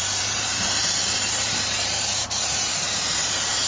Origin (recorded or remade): remade